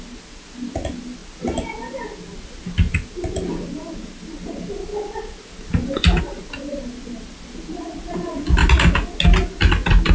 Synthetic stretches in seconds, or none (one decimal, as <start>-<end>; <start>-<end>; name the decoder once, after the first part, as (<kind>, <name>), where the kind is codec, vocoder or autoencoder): none